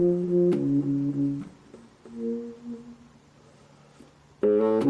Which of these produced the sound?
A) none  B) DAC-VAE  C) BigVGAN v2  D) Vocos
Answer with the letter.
A